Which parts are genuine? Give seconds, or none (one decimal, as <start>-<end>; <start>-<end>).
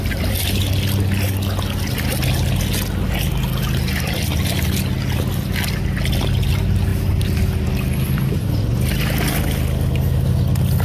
0.0-10.8